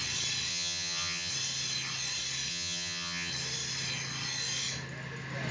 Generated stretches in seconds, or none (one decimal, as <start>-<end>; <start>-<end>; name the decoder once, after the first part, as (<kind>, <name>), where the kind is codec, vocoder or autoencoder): 0.5-1.3 (vocoder, HiFi-GAN); 2.5-3.3